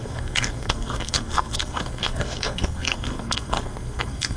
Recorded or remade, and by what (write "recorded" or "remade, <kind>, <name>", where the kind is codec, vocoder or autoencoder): remade, codec, SNAC